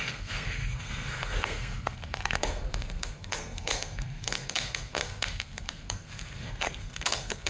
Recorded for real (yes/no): no